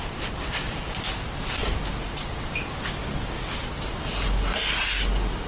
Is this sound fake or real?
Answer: real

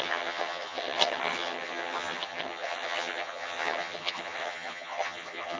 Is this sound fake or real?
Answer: fake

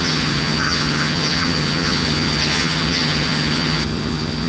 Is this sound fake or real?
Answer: fake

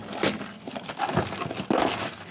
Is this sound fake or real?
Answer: real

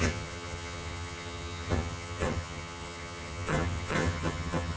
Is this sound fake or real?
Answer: fake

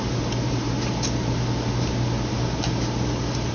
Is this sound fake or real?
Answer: real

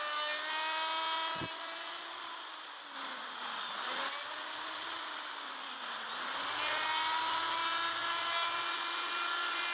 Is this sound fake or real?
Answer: real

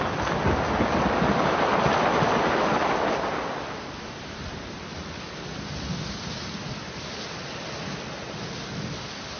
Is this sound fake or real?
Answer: real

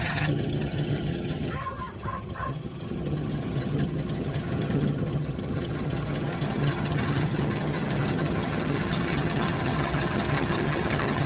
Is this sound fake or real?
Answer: fake